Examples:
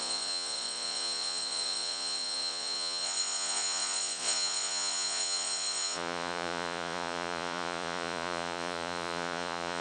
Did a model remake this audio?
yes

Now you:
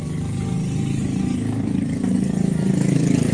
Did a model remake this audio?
no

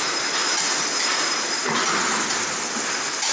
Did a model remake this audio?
no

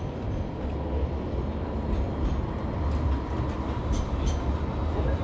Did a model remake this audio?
no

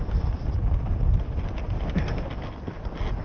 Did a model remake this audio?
no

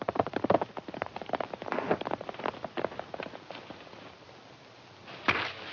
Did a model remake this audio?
no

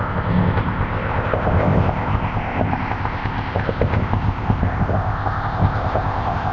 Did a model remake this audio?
yes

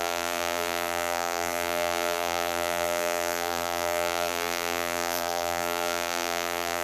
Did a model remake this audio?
yes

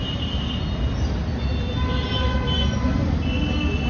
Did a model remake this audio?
no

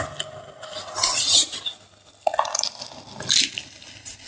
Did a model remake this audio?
no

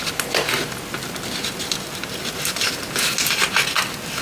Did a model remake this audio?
no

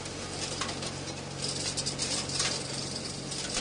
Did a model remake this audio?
no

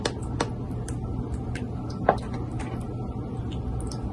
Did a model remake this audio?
no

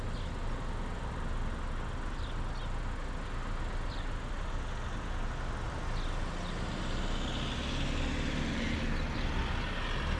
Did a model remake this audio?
no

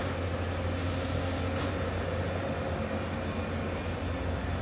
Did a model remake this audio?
no